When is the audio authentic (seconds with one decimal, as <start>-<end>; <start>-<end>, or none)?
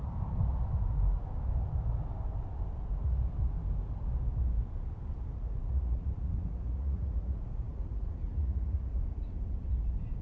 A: 0.0-5.3; 9.0-10.2